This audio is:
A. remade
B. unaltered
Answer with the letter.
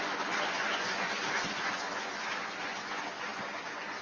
A